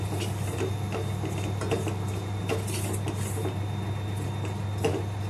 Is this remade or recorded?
recorded